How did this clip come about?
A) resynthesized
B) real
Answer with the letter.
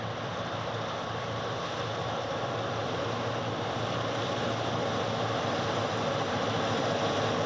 B